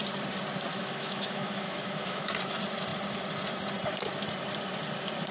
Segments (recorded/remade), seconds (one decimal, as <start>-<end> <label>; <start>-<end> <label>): 0.0-0.7 recorded; 0.7-2.3 remade; 2.3-5.3 recorded